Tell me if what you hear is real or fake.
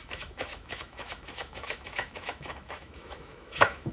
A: fake